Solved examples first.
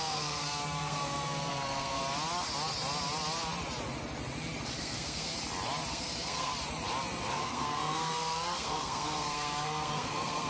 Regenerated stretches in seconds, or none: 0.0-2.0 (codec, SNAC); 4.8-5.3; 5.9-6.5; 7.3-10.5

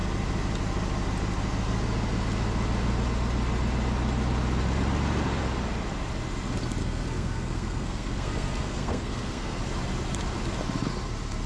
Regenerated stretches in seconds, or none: 6.8-9.6 (codec, SNAC)

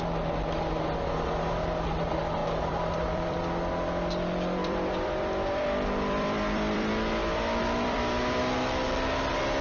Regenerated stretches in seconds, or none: 2.4-3.4 (vocoder, BigVGAN v2); 4.6-6.9; 7.6-8.4